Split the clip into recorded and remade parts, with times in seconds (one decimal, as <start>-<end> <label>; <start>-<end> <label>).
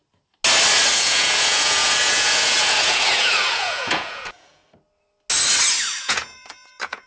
0.0-0.9 recorded; 0.9-4.6 remade; 4.6-6.0 recorded; 6.0-7.1 remade